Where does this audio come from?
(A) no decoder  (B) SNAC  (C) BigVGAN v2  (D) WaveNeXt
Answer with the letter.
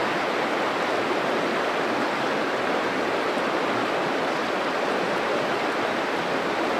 A